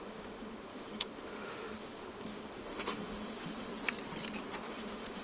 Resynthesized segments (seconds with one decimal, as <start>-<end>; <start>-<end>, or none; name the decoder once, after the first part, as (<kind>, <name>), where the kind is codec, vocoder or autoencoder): 0.0-3.7 (autoencoder, DAC-VAE); 4.7-5.2